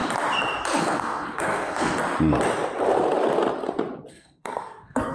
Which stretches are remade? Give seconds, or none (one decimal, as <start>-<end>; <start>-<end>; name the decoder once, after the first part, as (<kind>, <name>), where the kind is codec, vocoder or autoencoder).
0.8-2.0 (codec, SNAC); 4.1-5.1